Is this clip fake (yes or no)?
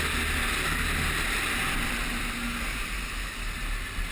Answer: no